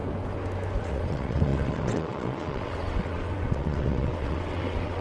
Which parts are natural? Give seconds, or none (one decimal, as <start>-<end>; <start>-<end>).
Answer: 0.0-0.8